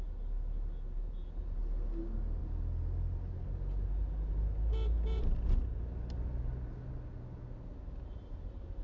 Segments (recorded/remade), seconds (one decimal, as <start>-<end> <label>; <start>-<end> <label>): 0.0-8.8 recorded